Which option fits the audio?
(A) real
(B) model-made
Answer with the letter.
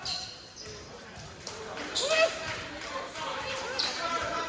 B